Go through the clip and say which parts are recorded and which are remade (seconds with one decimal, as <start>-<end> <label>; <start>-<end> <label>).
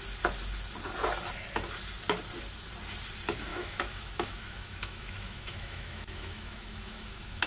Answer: 0.0-3.5 recorded; 3.5-7.5 remade